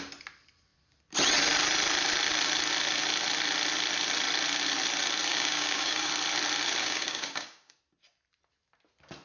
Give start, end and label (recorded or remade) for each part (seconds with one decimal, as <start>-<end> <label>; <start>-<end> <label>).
0.0-5.3 recorded; 5.3-6.1 remade; 6.1-6.8 recorded; 6.8-7.8 remade; 7.8-9.2 recorded